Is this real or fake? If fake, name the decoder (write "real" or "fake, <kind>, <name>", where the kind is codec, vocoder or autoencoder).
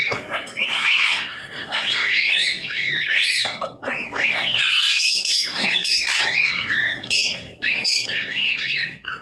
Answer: fake, codec, SNAC